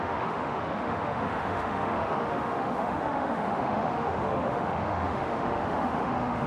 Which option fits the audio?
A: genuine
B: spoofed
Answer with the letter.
B